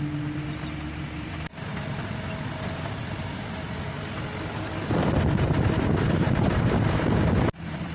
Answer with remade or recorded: recorded